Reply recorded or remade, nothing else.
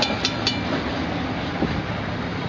recorded